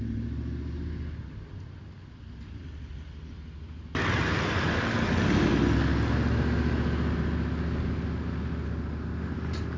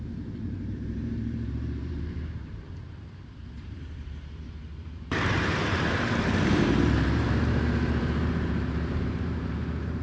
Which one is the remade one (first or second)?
second